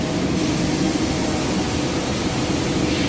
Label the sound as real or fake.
real